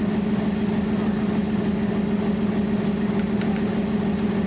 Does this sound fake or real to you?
real